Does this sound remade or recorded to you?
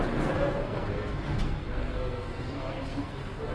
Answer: remade